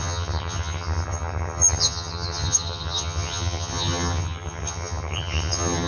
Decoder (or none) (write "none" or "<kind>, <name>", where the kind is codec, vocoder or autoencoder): vocoder, HiFi-GAN